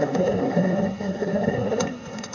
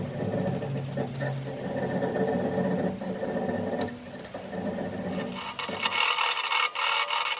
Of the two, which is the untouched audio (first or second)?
second